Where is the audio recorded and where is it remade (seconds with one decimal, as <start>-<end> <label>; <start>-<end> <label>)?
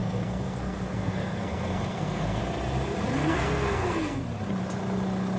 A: 0.0-2.4 remade; 2.4-3.2 recorded; 3.2-4.2 remade; 4.2-5.4 recorded